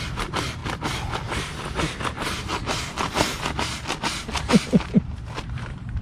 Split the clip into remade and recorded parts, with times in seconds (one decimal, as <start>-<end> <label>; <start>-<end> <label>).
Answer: 0.0-0.6 remade; 0.6-2.0 recorded; 2.0-2.5 remade; 2.5-4.5 recorded; 4.5-6.0 remade